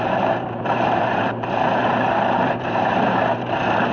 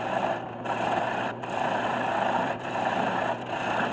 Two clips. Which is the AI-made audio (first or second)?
first